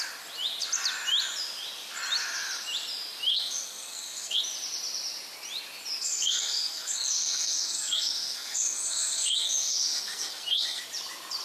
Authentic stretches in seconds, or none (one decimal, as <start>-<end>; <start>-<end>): 0.0-3.3; 4.4-6.0; 10.8-11.4